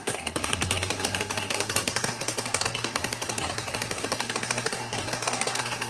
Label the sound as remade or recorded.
remade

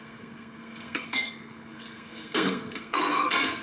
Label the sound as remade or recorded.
remade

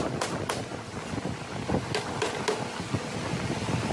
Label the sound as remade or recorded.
recorded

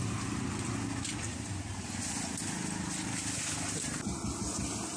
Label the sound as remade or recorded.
recorded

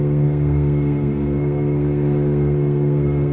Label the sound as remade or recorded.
remade